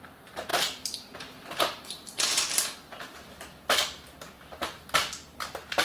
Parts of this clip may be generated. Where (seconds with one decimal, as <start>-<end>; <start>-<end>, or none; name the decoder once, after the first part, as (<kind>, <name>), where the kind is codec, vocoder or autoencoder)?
0.0-5.8 (vocoder, BigVGAN v2)